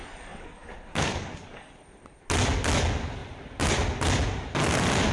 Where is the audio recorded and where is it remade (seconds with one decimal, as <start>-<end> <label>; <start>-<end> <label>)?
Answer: 0.0-1.7 remade; 1.7-5.1 recorded